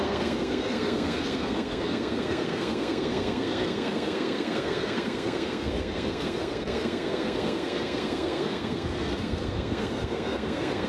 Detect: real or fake fake